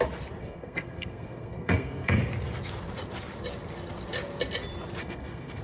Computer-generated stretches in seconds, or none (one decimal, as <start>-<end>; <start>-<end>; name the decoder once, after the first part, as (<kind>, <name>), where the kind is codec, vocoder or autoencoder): 0.4-2.2 (codec, SNAC); 5.0-5.6